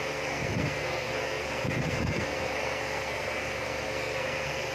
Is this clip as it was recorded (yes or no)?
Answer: no